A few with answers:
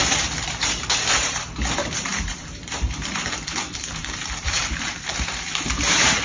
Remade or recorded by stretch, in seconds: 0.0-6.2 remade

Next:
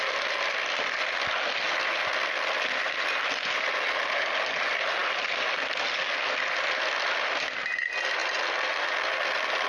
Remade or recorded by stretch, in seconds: 0.0-9.7 recorded

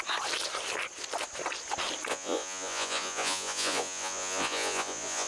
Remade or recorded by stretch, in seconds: 0.0-2.1 recorded; 2.1-5.3 remade